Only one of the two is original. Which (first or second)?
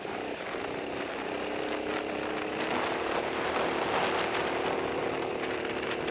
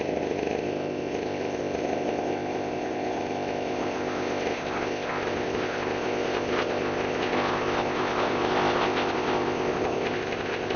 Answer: first